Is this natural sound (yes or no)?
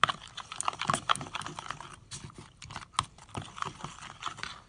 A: yes